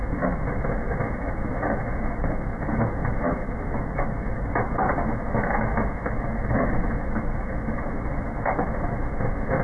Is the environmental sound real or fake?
fake